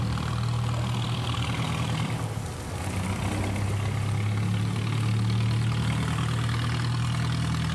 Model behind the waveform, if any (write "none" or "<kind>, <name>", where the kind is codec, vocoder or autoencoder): none